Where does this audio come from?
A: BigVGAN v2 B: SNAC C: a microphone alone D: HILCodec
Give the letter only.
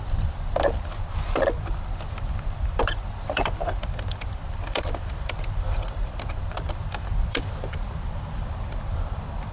A